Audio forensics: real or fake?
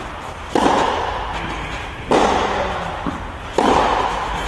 real